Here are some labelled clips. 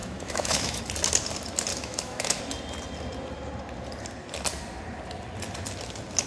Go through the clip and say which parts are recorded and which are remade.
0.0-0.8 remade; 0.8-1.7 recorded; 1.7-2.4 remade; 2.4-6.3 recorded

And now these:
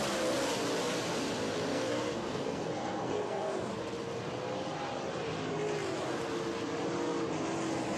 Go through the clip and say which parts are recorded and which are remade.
0.0-1.7 recorded; 1.7-3.7 remade; 3.7-8.0 recorded

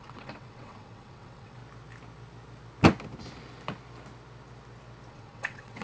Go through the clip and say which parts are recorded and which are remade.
0.0-1.6 remade; 1.6-5.1 recorded; 5.1-5.8 remade